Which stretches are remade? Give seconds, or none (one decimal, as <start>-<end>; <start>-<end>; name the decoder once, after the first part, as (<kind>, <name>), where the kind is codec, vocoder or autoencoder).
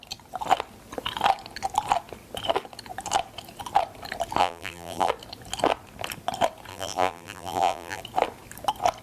4.4-5.1 (vocoder, BigVGAN v2); 6.7-8.0